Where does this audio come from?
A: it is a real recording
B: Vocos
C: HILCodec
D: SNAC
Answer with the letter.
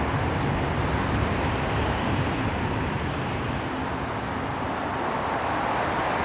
A